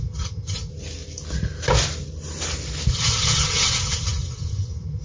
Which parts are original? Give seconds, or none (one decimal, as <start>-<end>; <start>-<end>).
0.7-2.9